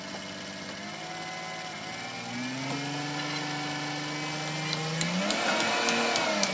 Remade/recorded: recorded